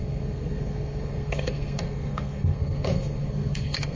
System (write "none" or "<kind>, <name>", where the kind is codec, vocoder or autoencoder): codec, SNAC